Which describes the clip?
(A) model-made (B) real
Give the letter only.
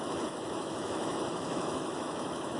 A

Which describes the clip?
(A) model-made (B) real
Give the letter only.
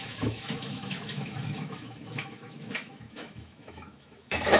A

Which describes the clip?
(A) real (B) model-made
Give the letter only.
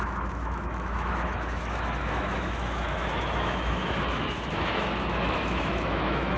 B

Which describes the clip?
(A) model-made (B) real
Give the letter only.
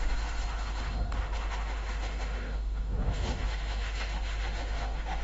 A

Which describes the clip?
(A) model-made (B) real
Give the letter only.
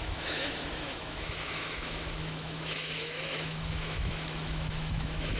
A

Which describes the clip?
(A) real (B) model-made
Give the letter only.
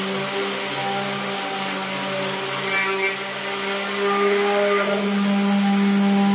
A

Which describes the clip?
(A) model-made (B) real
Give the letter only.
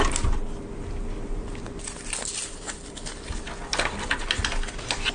B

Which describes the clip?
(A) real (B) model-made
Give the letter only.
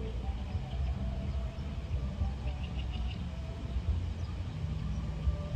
A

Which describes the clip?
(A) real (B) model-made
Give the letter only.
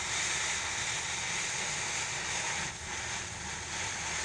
A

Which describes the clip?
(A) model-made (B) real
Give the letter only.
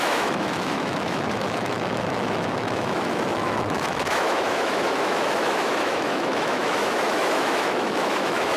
A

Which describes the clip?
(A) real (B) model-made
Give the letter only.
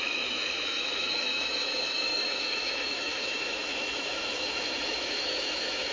B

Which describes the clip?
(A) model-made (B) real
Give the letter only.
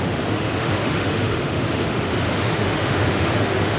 A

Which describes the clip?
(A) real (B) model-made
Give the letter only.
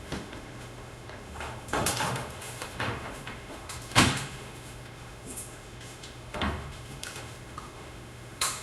B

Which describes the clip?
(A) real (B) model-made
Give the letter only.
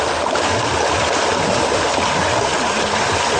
A